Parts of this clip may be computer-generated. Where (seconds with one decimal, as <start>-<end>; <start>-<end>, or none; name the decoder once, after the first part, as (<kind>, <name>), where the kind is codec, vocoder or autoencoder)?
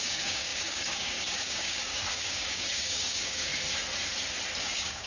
0.0-3.5 (codec, DAC); 4.6-5.1